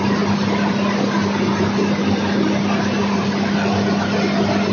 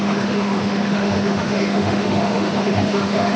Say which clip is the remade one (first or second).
second